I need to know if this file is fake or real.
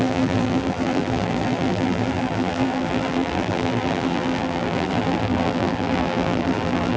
fake